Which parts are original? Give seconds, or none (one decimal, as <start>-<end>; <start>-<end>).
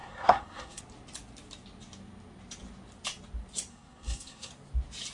0.8-3.7; 4.5-5.1